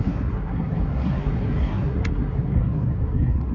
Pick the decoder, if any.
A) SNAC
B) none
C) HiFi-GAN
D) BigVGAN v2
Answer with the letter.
A